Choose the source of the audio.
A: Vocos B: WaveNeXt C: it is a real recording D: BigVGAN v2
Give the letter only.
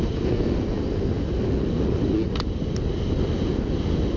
C